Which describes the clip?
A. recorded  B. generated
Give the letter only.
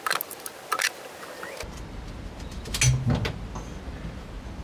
A